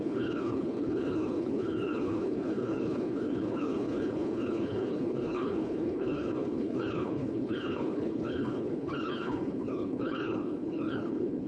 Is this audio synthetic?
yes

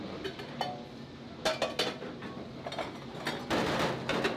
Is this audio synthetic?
no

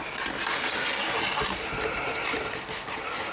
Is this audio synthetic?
no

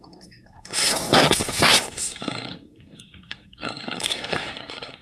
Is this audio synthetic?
yes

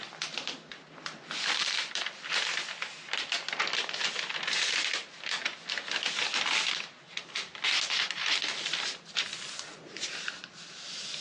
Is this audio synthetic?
no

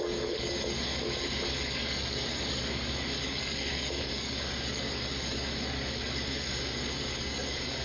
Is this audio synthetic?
yes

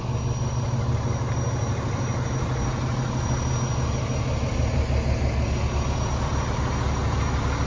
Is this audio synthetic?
no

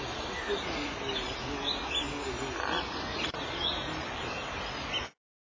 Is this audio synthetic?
no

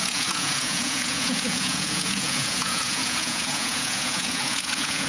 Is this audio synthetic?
yes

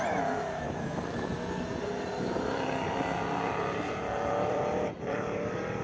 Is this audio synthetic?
yes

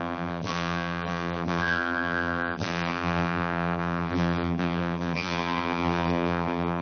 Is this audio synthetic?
yes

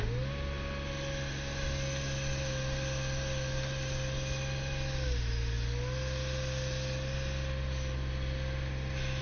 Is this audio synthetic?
no